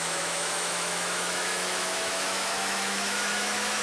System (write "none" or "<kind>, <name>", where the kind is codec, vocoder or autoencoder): autoencoder, DAC-VAE